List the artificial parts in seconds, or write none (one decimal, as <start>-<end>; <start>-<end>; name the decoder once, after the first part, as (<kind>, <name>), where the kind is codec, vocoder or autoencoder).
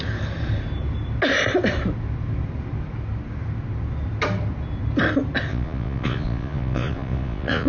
5.5-7.7 (vocoder, Vocos)